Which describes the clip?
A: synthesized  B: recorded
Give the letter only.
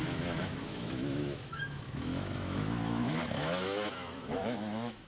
A